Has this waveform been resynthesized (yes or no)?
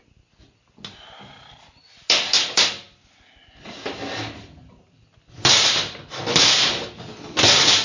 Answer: no